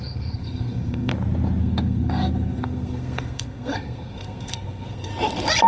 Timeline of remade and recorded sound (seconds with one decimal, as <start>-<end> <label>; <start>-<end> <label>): 0.0-1.1 remade; 1.1-1.6 recorded; 1.6-5.1 remade; 5.1-5.7 recorded